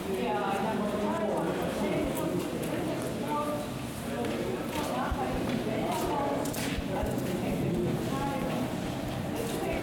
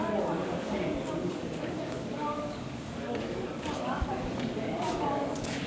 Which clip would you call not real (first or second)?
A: second